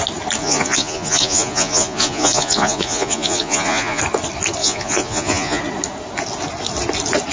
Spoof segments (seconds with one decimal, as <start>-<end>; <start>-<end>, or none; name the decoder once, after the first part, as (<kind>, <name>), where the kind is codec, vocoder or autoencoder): 0.4-4.0 (vocoder, Vocos); 4.6-5.6

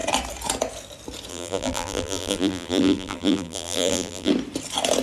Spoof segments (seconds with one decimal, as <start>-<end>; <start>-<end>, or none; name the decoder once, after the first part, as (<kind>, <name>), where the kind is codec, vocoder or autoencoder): 1.3-4.3 (vocoder, BigVGAN v2)

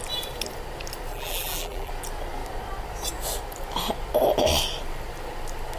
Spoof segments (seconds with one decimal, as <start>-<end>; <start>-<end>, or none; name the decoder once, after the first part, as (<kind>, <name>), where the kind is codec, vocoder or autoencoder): 1.1-1.9 (vocoder, BigVGAN v2)